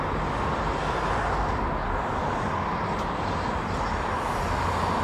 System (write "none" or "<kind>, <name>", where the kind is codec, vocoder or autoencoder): none